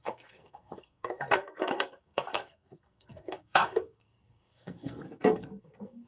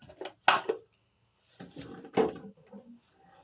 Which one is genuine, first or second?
second